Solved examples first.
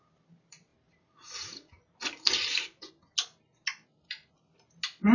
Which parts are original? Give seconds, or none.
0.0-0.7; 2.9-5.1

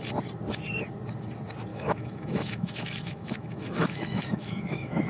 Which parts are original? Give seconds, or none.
0.0-1.7

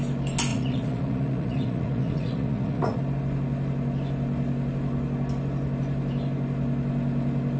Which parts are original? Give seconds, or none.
0.0-0.5; 3.0-7.6